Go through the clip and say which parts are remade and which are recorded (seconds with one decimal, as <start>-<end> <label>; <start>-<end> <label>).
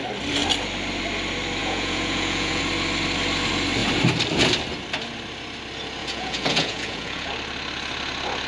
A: 0.0-1.6 recorded; 1.6-2.6 remade; 2.6-6.0 recorded; 6.0-7.3 remade; 7.3-8.5 recorded